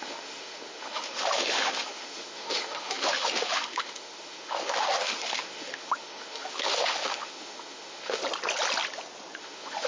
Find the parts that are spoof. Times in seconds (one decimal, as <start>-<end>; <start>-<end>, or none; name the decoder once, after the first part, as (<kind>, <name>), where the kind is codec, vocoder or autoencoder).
0.0-8.2 (autoencoder, DAC-VAE); 9.4-9.9